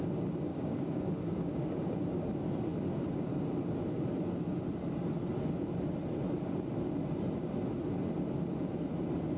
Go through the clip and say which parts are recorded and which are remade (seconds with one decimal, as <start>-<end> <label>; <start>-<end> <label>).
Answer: 0.0-0.5 recorded; 0.5-2.3 remade; 2.3-9.4 recorded